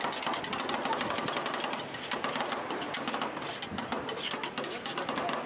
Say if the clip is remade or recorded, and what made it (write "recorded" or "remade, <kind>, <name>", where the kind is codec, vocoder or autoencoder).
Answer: recorded